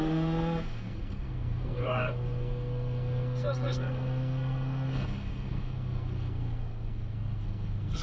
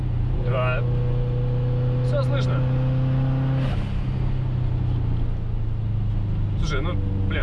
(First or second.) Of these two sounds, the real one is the second